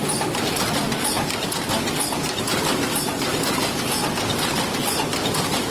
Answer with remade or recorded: recorded